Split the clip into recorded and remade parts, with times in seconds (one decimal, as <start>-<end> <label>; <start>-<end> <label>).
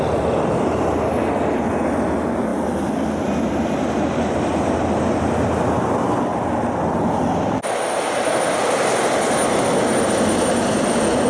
0.0-11.3 recorded